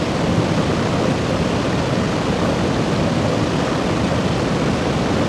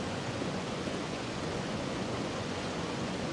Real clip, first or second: first